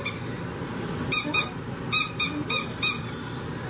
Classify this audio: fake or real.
fake